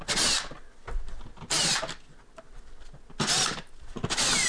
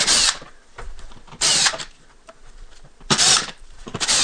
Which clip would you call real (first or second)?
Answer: first